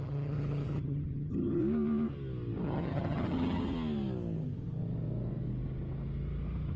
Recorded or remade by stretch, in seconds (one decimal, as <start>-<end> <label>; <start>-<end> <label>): 0.0-1.6 remade; 1.6-2.6 recorded; 2.6-3.6 remade; 3.6-6.8 recorded